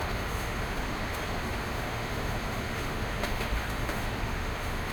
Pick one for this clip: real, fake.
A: fake